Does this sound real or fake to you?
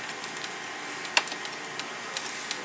real